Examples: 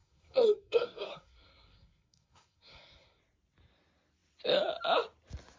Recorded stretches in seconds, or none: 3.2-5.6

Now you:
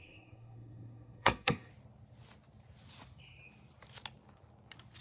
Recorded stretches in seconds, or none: 1.7-5.0

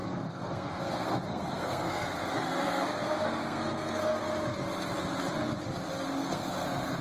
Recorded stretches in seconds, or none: 4.2-6.2